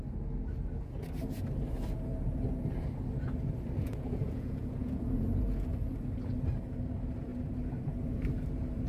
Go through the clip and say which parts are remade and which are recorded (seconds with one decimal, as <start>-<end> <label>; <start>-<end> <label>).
0.0-3.8 recorded; 3.8-5.4 remade; 5.4-8.9 recorded